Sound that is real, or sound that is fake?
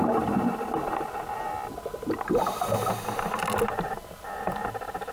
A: real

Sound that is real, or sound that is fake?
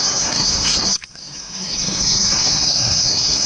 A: fake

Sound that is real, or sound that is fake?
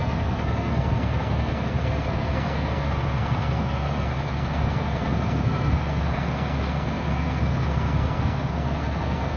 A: fake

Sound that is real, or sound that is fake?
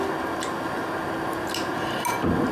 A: real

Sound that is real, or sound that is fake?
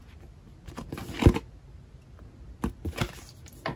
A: real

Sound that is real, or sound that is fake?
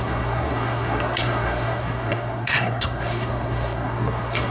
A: fake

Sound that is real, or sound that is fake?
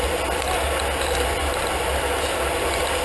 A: real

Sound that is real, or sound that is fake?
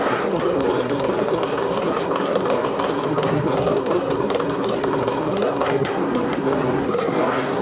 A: fake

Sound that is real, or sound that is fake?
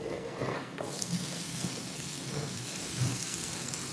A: fake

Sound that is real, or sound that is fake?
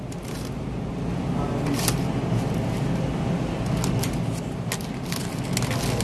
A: real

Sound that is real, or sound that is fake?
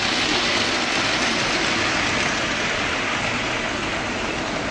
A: real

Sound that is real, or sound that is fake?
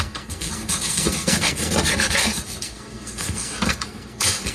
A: fake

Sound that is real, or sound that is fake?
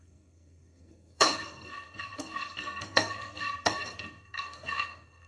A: fake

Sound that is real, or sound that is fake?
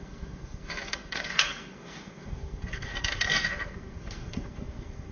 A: fake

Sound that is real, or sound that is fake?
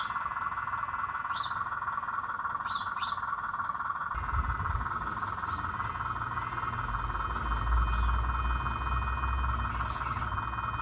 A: real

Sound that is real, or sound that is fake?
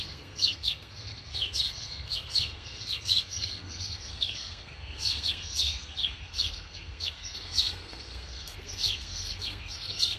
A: fake